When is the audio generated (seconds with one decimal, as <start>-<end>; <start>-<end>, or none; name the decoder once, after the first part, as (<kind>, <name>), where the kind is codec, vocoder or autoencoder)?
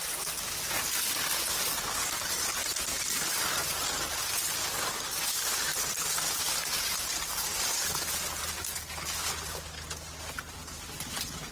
2.6-3.3 (vocoder, BigVGAN v2)